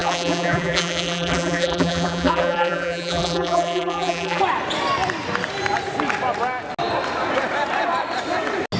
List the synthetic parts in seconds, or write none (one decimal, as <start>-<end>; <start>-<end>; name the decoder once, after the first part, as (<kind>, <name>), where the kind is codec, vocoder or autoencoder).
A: 0.0-4.4 (vocoder, BigVGAN v2)